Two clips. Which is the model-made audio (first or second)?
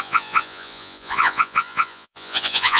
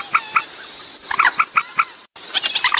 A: first